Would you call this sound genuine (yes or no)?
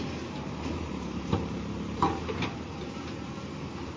no